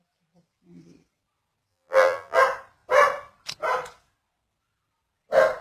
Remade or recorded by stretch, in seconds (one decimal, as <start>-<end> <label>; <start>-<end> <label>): 0.0-1.7 recorded; 1.7-2.4 remade; 2.4-5.6 recorded